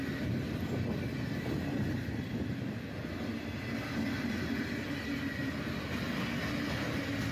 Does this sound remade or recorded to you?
recorded